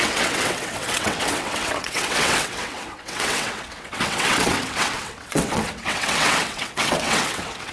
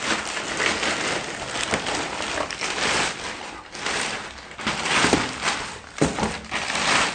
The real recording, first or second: second